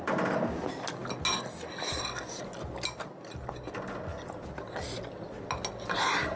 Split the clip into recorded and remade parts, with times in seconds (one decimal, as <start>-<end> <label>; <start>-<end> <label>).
0.0-6.4 recorded